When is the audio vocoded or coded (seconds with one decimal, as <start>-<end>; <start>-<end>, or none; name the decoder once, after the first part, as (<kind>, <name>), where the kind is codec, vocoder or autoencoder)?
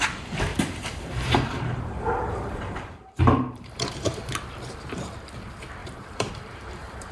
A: 0.5-4.3 (vocoder, BigVGAN v2); 5.8-7.1